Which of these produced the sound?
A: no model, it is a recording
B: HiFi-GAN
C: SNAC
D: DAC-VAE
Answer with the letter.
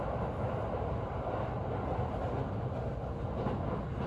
A